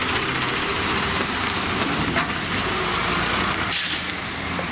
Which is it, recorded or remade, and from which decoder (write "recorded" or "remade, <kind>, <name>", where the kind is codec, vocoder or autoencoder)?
recorded